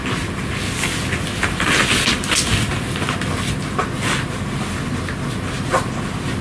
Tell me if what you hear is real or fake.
real